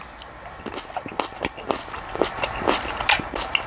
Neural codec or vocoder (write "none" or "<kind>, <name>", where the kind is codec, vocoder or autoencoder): none